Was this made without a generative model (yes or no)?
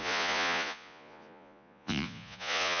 no